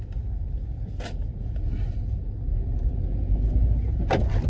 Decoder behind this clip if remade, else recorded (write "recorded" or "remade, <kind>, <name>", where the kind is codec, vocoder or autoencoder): recorded